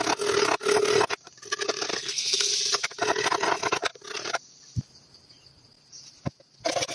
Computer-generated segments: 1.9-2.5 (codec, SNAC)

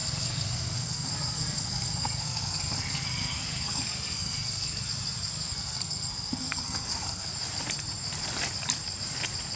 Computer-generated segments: 0.0-4.8 (codec, SNAC); 5.3-7.3